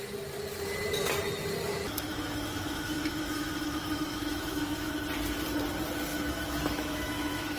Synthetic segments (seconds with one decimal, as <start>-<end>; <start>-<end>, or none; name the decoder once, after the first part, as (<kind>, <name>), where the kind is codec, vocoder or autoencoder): 1.7-4.9 (autoencoder, DAC-VAE); 6.1-7.6